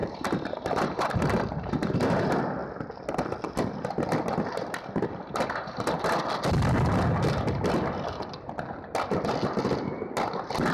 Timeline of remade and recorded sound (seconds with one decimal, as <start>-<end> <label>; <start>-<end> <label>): 0.0-1.1 remade; 1.1-10.7 recorded